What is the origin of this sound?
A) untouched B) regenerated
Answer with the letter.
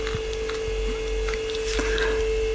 A